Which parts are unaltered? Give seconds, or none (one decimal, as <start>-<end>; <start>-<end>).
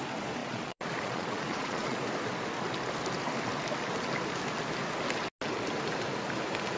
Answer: 0.0-0.4; 2.0-6.8